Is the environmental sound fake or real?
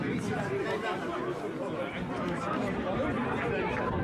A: real